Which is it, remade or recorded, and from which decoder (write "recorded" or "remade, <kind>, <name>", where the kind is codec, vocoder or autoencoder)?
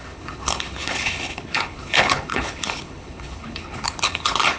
remade, codec, HILCodec